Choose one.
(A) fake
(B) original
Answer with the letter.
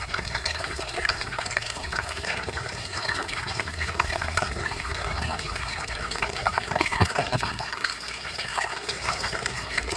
A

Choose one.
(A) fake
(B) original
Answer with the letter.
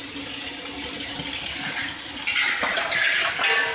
B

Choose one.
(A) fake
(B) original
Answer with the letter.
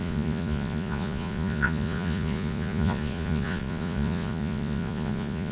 A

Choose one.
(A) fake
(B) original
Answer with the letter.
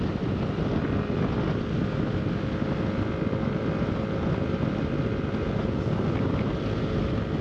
B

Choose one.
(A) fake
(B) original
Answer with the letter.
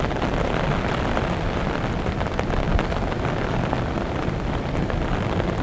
B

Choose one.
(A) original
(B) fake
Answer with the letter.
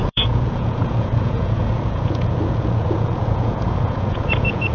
B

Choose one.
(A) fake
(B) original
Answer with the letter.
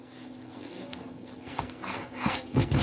A